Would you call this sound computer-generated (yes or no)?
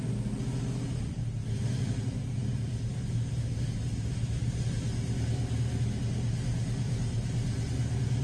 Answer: no